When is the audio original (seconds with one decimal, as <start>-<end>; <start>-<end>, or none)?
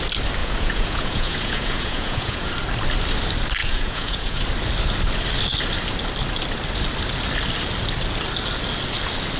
0.0-0.4; 2.5-3.6; 4.4-9.4